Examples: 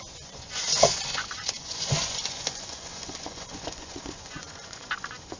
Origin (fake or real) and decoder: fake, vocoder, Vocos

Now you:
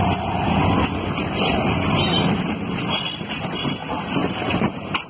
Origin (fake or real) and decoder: real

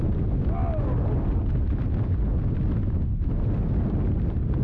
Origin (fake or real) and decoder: real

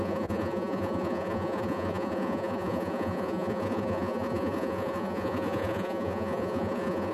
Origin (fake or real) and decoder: fake, vocoder, Vocos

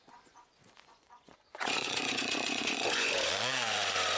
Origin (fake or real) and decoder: fake, vocoder, Vocos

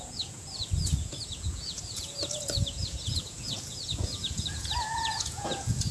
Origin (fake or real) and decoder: fake, vocoder, Vocos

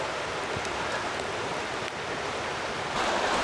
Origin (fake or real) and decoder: real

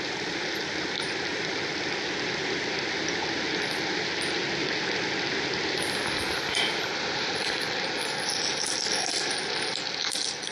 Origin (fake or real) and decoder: real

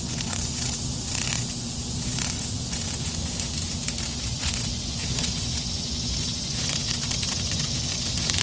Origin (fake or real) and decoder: fake, vocoder, Vocos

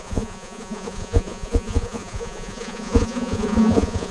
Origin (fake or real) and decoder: fake, vocoder, Vocos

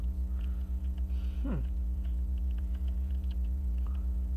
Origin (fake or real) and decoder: fake, vocoder, Vocos